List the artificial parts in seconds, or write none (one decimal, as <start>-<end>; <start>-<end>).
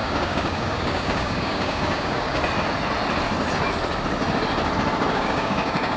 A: 0.0-2.4; 5.1-6.0